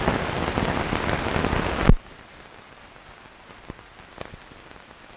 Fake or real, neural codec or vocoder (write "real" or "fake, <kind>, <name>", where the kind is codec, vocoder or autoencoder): real